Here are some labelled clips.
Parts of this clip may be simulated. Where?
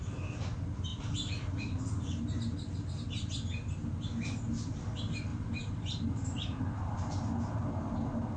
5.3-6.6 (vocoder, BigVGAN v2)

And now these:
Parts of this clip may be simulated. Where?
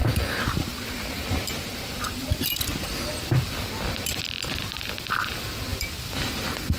0.0-3.7 (vocoder, BigVGAN v2); 5.7-6.8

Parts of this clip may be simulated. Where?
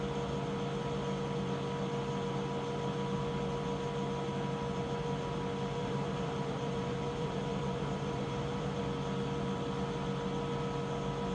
5.8-8.8 (vocoder, BigVGAN v2)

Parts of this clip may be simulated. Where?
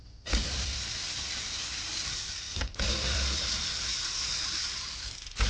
0.4-3.7 (vocoder, BigVGAN v2)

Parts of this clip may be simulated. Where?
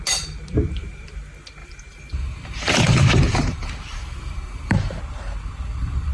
1.6-5.0 (vocoder, BigVGAN v2)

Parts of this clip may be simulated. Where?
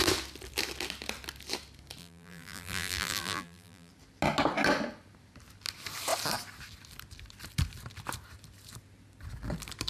2.0-3.9 (vocoder, BigVGAN v2)